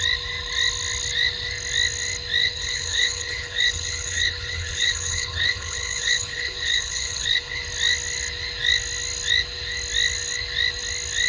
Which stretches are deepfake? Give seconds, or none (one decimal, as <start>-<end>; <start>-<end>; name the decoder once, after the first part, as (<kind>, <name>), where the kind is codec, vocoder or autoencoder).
2.4-7.6 (codec, HILCodec)